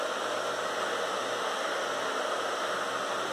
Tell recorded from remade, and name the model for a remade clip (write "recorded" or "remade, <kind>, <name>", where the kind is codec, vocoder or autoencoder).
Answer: recorded